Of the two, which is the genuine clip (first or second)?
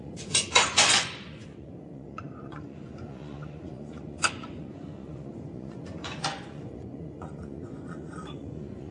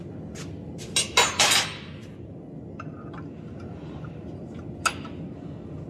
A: second